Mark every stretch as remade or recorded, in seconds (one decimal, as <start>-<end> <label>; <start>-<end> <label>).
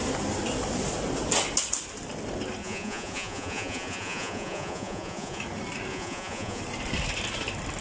0.0-2.6 recorded; 2.6-5.4 remade; 5.4-5.9 recorded; 5.9-6.6 remade; 6.6-7.8 recorded